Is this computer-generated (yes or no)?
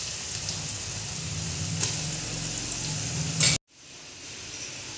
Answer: no